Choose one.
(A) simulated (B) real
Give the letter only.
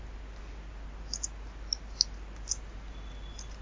B